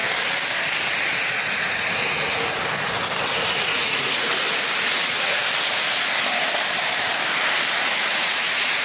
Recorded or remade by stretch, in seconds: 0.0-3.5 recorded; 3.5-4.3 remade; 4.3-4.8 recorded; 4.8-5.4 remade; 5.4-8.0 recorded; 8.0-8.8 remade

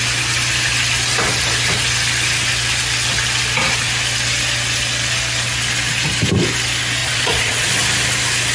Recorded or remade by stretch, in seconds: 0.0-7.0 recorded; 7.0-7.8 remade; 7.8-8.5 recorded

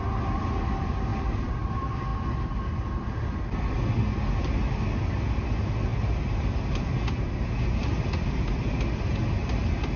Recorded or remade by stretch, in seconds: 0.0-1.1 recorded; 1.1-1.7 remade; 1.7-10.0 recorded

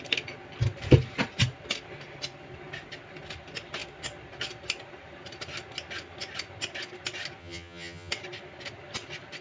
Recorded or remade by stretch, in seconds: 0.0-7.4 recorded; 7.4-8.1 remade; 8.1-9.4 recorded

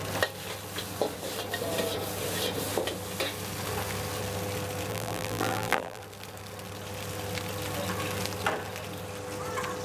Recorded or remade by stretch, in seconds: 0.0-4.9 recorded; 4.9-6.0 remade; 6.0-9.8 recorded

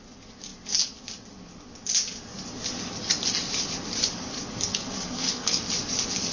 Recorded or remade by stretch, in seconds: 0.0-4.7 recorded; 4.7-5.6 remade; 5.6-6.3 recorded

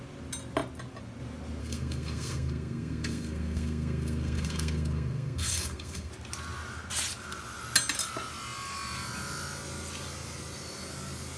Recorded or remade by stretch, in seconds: 0.0-1.6 recorded; 1.6-6.1 remade; 6.1-11.4 recorded

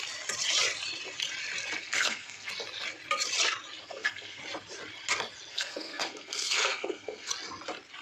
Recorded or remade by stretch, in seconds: 0.0-1.8 recorded; 1.8-2.5 remade; 2.5-3.8 recorded; 3.8-4.4 remade; 4.4-5.5 recorded; 5.5-7.3 remade; 7.3-8.0 recorded